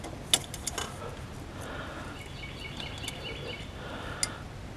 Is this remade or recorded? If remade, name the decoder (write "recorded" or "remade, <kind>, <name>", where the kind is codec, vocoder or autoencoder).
recorded